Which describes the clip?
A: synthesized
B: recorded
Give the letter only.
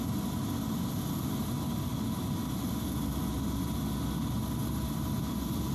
B